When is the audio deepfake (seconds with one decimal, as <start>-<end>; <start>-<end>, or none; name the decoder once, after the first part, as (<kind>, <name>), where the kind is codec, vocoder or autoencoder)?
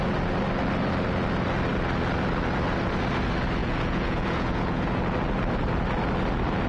3.6-5.0 (vocoder, Vocos)